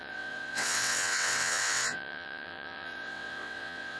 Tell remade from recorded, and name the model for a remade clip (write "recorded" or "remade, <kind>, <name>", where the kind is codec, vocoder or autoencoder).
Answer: remade, vocoder, WaveNeXt